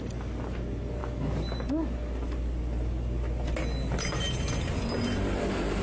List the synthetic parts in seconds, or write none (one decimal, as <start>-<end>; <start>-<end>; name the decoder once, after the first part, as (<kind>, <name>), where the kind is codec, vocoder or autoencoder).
none